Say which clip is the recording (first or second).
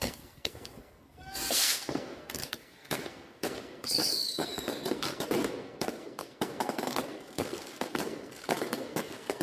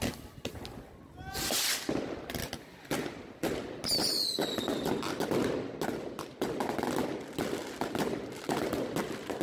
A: second